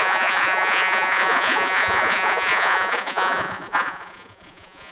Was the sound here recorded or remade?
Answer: remade